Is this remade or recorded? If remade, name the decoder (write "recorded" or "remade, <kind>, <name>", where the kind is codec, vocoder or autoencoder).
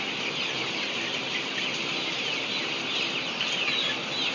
remade, vocoder, BigVGAN v2